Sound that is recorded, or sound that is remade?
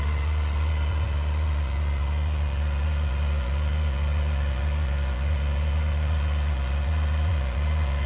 remade